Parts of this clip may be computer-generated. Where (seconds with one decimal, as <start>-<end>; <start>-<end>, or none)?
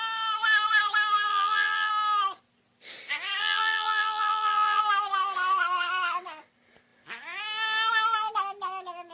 1.3-1.9; 3.4-4.8